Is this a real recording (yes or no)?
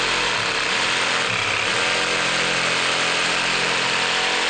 yes